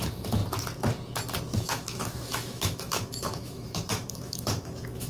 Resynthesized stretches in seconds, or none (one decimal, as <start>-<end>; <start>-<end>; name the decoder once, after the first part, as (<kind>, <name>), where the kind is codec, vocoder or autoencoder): 0.0-0.4 (autoencoder, DAC-VAE); 1.6-5.1